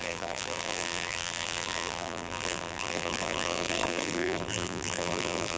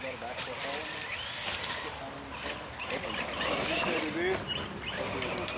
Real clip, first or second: second